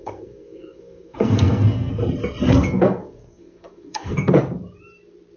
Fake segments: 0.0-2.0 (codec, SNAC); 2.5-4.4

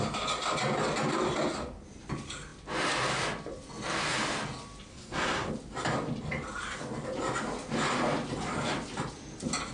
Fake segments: 4.9-5.5 (codec, SNAC)

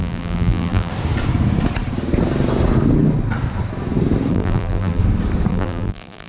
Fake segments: 0.0-0.9 (vocoder, BigVGAN v2); 4.3-5.0; 5.5-6.3